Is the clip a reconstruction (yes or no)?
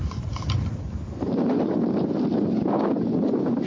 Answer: no